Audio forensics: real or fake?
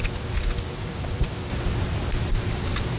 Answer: real